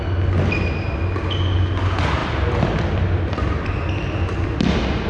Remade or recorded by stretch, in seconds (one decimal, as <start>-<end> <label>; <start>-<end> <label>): 0.0-5.1 recorded